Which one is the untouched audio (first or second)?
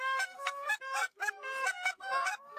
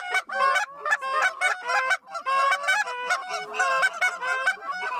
second